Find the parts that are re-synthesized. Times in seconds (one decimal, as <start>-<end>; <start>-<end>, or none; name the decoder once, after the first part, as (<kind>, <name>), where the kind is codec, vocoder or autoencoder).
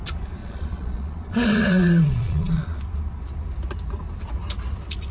0.4-2.8 (vocoder, Vocos)